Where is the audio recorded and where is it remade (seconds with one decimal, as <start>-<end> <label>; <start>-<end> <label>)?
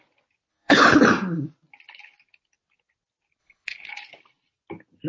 0.0-0.5 recorded; 0.5-1.0 remade; 1.0-3.4 recorded; 3.4-3.9 remade; 3.9-5.1 recorded